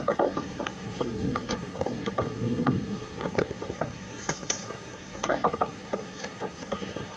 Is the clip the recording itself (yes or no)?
no